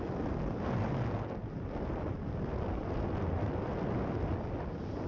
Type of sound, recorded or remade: recorded